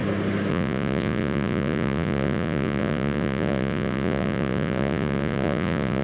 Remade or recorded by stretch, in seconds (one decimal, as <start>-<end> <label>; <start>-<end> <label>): 0.0-0.5 recorded; 0.5-6.0 remade